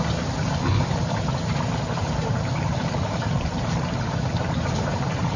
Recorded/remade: remade